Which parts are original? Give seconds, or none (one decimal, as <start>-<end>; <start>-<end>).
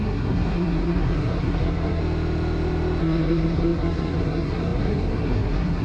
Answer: 2.0-3.0